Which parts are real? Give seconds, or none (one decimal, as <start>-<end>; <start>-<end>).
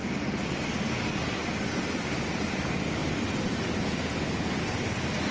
0.0-5.3